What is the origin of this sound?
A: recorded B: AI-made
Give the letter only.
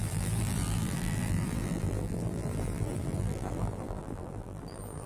B